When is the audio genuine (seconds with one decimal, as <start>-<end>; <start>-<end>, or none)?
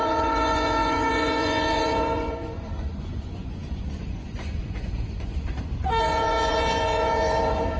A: none